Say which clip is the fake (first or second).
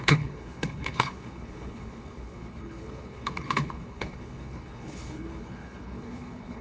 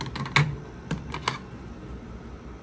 first